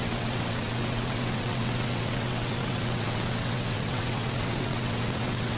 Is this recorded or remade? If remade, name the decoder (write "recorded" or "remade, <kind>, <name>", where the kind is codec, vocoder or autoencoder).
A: remade, vocoder, WaveNeXt